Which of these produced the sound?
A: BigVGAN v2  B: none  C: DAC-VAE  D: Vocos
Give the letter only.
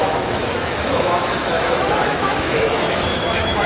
C